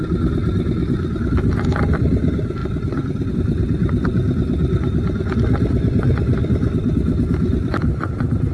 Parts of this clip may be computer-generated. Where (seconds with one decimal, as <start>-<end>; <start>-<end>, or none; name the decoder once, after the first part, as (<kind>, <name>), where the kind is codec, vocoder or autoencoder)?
none